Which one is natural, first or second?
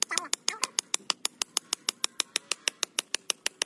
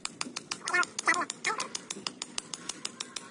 first